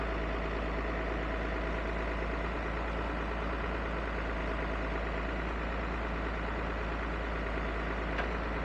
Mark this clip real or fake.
real